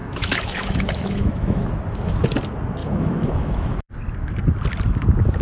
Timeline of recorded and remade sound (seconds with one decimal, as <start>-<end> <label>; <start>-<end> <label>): 0.0-1.6 remade; 1.6-2.8 recorded; 2.8-3.9 remade; 3.9-5.4 recorded